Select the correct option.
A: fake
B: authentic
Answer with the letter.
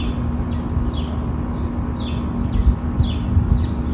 B